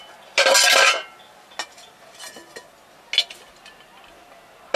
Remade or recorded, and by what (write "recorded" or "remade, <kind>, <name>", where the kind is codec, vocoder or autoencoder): recorded